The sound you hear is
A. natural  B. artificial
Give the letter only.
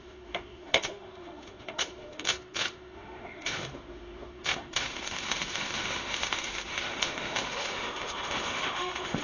B